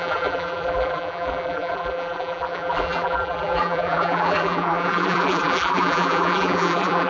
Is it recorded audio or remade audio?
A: remade